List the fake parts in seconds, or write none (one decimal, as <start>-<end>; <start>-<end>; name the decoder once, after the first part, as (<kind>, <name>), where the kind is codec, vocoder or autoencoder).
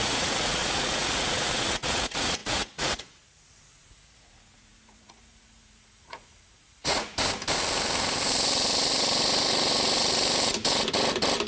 0.0-7.1 (vocoder, Vocos)